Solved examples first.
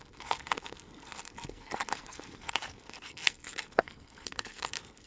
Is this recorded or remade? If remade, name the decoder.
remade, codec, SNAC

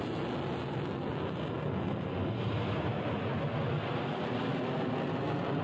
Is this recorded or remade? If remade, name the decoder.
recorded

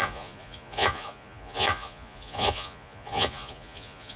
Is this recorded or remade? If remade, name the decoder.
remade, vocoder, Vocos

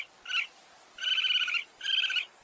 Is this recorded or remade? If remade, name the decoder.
recorded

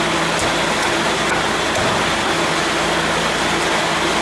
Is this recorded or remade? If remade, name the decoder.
recorded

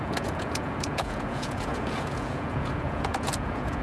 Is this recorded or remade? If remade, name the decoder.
remade, vocoder, Vocos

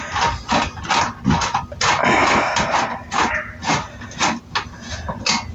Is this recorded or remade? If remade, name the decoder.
recorded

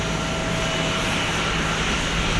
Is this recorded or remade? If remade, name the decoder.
recorded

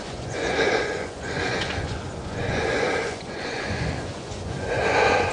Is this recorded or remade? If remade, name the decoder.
remade, vocoder, Vocos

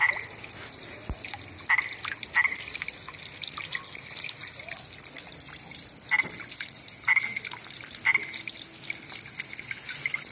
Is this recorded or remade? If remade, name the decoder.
recorded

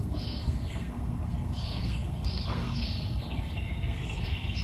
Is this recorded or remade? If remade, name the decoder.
remade, codec, SNAC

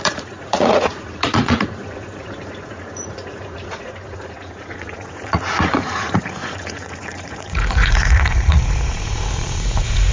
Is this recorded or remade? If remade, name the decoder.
remade, vocoder, Vocos